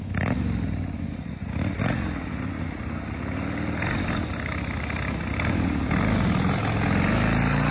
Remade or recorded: recorded